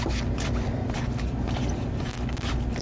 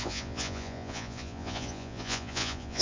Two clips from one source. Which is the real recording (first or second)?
first